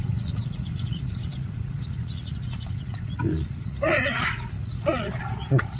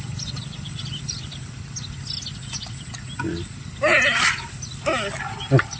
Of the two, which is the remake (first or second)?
first